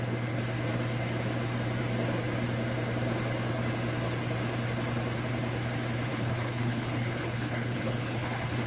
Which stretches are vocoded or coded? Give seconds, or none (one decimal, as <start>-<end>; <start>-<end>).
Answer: 6.1-8.7